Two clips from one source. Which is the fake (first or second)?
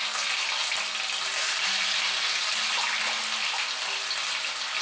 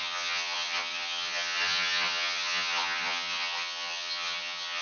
second